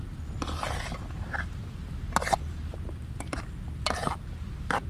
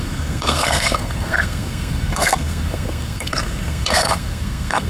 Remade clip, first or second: second